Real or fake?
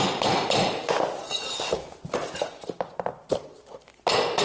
real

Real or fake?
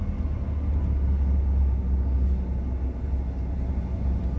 real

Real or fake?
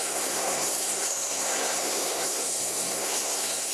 fake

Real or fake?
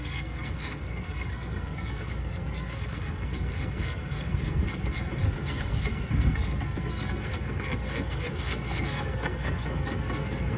fake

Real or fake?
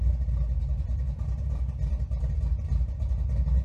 real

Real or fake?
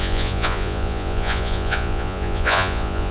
fake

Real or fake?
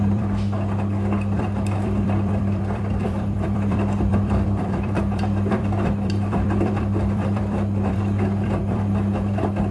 fake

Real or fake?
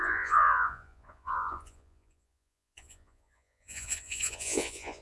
fake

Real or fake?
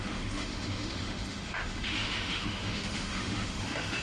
fake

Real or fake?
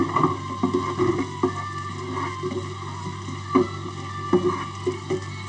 real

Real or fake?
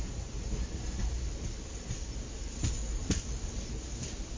real